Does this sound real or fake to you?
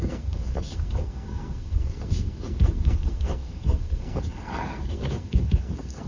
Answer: fake